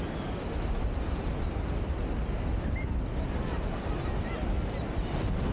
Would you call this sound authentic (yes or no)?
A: yes